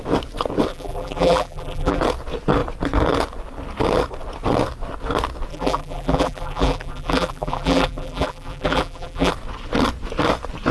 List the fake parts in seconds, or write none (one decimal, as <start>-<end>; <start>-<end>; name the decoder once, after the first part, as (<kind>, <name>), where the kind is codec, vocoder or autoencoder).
0.7-2.0 (vocoder, BigVGAN v2); 5.5-9.3